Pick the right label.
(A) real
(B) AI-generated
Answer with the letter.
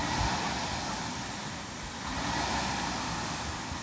A